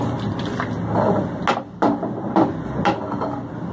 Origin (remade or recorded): recorded